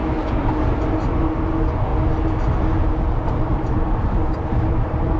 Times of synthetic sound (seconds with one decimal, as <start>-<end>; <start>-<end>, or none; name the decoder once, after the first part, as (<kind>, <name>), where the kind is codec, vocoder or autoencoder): 0.5-1.9 (vocoder, BigVGAN v2); 3.3-5.2